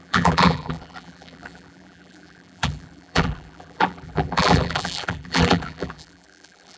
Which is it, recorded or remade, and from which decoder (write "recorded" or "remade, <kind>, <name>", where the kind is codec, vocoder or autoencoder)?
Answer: remade, vocoder, BigVGAN v2